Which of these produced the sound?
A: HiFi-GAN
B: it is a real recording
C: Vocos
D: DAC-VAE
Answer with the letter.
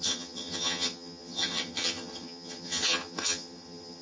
A